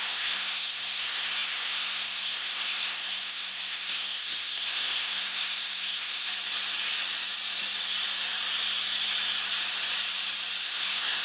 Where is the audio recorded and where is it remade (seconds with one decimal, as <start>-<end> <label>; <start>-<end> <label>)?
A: 0.0-6.3 remade; 6.3-10.6 recorded; 10.6-11.2 remade